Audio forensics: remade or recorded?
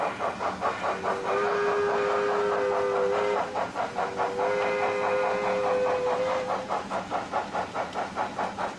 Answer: recorded